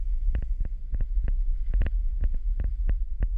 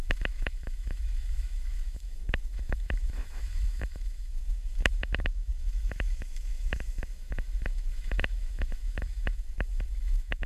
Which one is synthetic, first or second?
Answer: second